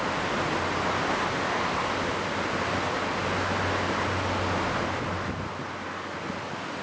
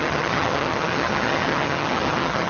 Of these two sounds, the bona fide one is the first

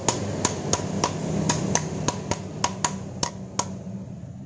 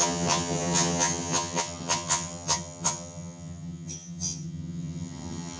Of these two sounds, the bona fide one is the first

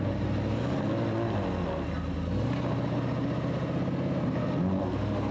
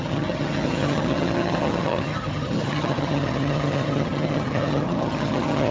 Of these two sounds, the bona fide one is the first